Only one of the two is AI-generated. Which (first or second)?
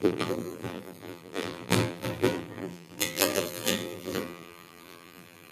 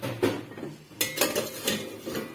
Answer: first